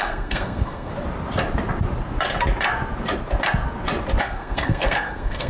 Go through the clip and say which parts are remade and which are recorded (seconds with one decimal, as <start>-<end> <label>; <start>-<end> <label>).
0.0-0.9 remade; 0.9-4.2 recorded; 4.2-5.5 remade